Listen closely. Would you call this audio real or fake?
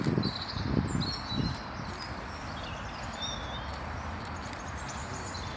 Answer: real